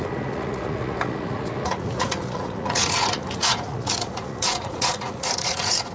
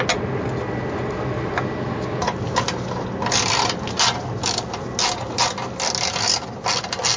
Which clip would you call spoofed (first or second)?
first